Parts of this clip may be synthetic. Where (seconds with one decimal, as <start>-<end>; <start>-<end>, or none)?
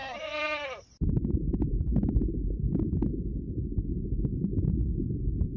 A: 0.0-3.4